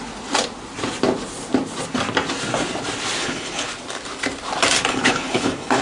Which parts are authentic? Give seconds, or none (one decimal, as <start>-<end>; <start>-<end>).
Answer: 0.0-3.2; 3.7-4.9